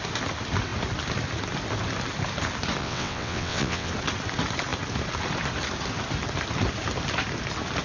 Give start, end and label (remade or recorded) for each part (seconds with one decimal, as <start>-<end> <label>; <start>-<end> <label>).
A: 0.0-2.8 recorded; 2.8-3.9 remade; 3.9-7.8 recorded

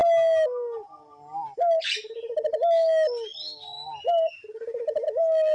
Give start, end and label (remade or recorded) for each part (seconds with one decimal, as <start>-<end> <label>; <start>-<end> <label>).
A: 0.0-5.5 recorded

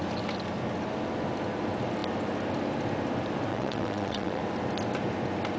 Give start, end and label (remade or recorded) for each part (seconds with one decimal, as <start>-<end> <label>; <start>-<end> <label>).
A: 0.0-3.5 recorded; 3.5-4.4 remade; 4.4-5.6 recorded

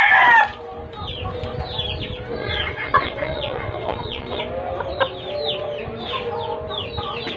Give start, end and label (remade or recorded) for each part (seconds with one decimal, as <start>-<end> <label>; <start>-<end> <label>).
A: 0.0-2.4 recorded; 2.4-4.4 remade; 4.4-7.4 recorded

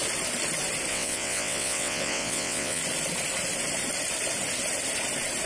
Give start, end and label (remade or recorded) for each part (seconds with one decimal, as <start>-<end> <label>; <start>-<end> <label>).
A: 0.0-0.9 recorded; 0.9-2.8 remade; 2.8-5.5 recorded

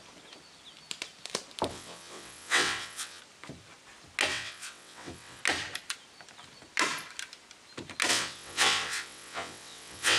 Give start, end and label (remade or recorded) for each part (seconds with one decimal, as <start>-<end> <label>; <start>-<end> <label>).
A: 0.0-1.7 recorded; 1.7-3.2 remade; 3.2-4.3 recorded; 4.3-5.4 remade; 5.4-8.1 recorded; 8.1-10.2 remade

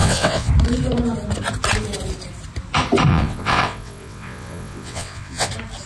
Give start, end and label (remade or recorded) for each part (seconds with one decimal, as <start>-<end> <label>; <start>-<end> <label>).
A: 0.0-0.5 remade; 0.5-3.1 recorded; 3.1-5.5 remade; 5.5-5.9 recorded

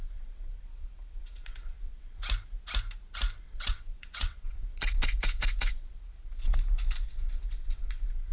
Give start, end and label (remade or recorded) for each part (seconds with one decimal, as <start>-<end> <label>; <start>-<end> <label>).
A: 0.0-2.2 remade; 2.2-3.4 recorded; 3.4-6.5 remade; 6.5-7.1 recorded; 7.1-8.3 remade